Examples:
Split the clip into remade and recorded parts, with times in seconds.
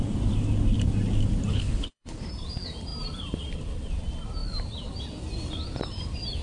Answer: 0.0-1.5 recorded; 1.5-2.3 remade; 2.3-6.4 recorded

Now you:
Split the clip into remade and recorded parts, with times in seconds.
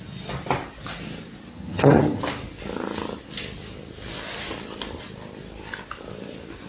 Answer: 0.0-1.5 recorded; 1.5-2.2 remade; 2.2-6.7 recorded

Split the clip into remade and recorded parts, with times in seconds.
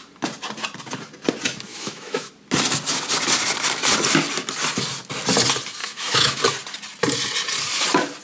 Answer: 0.0-1.7 recorded; 1.7-2.3 remade; 2.3-5.8 recorded; 5.8-6.4 remade; 6.4-8.2 recorded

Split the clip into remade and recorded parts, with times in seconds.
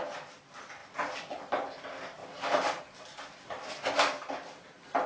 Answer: 0.0-2.2 recorded; 2.2-5.1 remade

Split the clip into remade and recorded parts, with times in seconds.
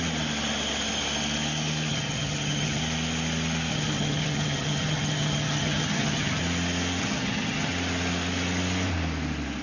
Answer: 0.0-1.9 recorded; 1.9-2.8 remade; 2.8-3.7 recorded; 3.7-6.4 remade; 6.4-7.0 recorded; 7.0-7.7 remade; 7.7-9.6 recorded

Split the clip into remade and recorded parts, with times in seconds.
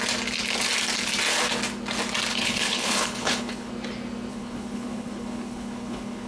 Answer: 0.0-2.3 recorded; 2.3-3.7 remade; 3.7-4.3 recorded; 4.3-6.3 remade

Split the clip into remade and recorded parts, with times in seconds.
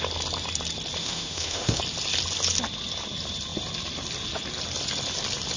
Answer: 0.0-1.0 recorded; 1.0-1.8 remade; 1.8-5.6 recorded